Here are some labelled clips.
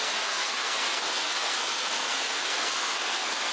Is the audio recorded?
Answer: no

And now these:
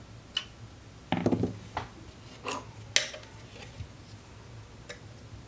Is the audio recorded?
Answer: yes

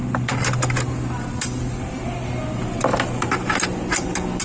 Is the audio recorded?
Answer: yes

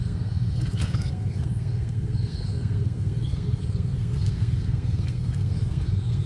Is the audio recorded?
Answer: no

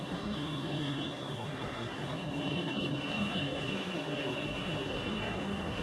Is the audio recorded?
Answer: no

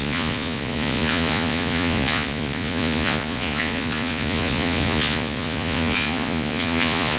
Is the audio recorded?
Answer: no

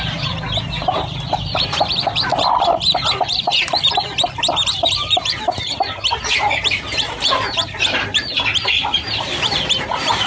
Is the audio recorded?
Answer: no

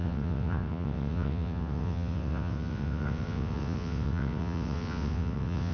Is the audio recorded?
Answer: no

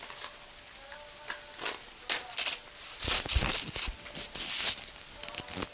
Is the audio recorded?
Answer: yes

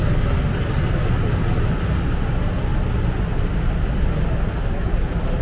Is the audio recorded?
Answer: yes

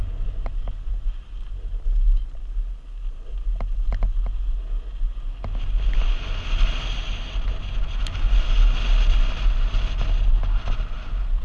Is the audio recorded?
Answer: yes